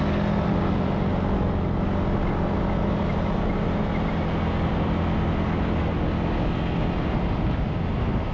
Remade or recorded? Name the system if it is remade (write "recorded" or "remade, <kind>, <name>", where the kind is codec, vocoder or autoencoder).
recorded